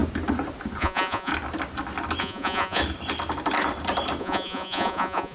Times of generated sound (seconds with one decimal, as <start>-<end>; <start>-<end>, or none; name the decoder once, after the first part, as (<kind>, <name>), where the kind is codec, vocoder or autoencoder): 0.8-1.3 (vocoder, Vocos); 2.2-2.8; 4.2-5.3